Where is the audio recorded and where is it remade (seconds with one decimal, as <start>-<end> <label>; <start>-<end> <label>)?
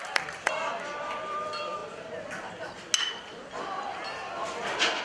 0.0-1.8 remade; 1.8-5.0 recorded